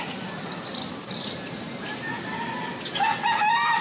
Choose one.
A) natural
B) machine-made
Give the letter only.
A